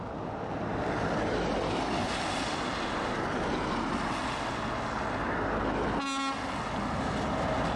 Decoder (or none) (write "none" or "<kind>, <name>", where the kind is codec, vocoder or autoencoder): none